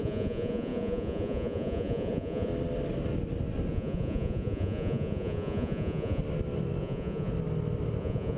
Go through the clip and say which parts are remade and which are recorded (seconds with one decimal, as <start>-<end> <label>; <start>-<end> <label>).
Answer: 0.0-2.5 remade; 2.5-3.7 recorded; 3.7-6.2 remade; 6.2-6.8 recorded; 6.8-7.3 remade; 7.3-8.0 recorded; 8.0-8.4 remade